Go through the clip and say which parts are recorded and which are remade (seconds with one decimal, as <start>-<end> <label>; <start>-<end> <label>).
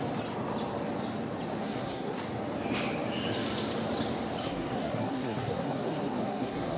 0.0-1.6 recorded; 1.6-2.2 remade; 2.2-4.4 recorded; 4.4-6.8 remade